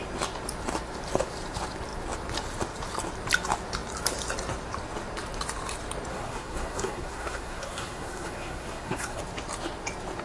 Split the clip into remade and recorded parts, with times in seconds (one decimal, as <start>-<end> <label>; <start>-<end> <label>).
0.0-6.1 recorded; 6.1-9.2 remade; 9.2-10.2 recorded